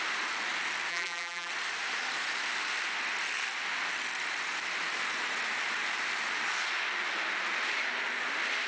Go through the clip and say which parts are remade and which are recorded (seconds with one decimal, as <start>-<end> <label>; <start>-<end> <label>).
0.0-0.9 recorded; 0.9-1.5 remade; 1.5-8.7 recorded

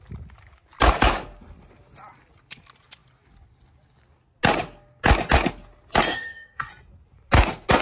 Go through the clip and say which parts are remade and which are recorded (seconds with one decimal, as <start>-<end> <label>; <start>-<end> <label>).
0.0-6.1 recorded; 6.1-6.7 remade; 6.7-7.8 recorded